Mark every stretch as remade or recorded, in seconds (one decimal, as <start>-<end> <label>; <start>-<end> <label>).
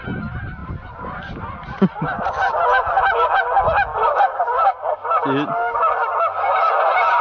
0.0-7.2 recorded